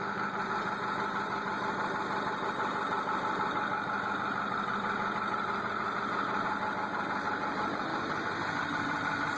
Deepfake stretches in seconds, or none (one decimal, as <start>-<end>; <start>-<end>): none